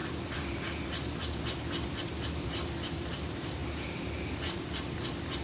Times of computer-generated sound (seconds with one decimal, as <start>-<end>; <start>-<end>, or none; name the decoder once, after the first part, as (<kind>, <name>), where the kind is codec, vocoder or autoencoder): 2.5-3.6 (vocoder, BigVGAN v2); 4.4-5.4